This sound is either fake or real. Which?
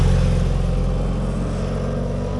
real